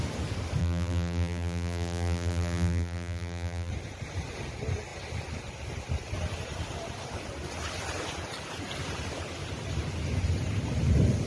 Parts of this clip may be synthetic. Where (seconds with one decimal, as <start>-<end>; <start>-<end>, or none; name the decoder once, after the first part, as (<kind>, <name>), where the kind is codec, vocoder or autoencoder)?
0.6-3.7 (vocoder, BigVGAN v2)

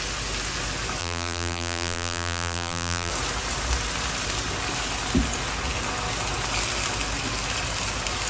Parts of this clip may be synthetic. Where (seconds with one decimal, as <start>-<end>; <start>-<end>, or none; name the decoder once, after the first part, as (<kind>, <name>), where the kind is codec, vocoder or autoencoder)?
1.0-3.1 (vocoder, BigVGAN v2)

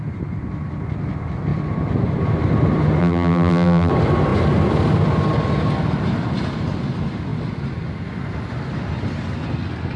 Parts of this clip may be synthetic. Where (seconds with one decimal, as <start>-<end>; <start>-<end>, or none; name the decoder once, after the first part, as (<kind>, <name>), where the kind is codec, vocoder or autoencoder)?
3.0-3.9 (vocoder, BigVGAN v2)